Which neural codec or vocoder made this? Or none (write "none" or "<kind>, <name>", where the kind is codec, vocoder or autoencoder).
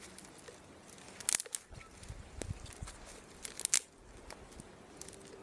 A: none